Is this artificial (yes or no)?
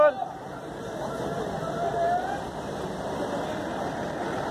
no